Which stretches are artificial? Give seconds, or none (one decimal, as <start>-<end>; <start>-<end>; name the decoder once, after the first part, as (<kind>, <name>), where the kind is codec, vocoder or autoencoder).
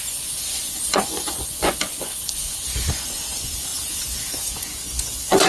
0.0-5.5 (vocoder, Vocos)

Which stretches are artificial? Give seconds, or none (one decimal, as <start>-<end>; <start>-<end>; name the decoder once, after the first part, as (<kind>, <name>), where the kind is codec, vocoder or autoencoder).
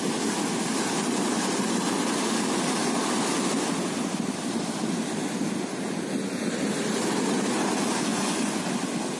8.1-8.6 (vocoder, Vocos)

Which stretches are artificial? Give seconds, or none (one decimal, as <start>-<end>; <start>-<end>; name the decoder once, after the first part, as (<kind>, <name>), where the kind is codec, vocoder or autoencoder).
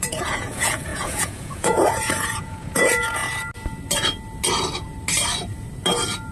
0.0-3.2 (vocoder, Vocos)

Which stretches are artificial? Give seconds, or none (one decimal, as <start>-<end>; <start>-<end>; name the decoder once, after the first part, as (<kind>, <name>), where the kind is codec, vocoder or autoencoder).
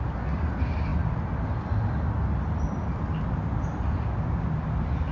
none